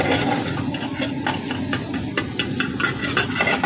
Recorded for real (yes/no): yes